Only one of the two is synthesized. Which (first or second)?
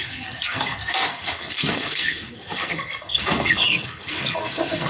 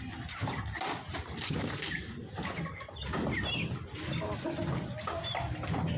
first